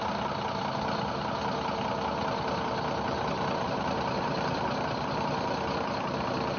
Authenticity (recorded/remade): recorded